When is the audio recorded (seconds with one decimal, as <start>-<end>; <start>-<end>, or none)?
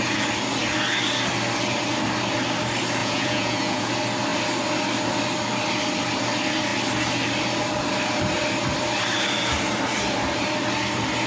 0.0-3.0; 3.9-11.3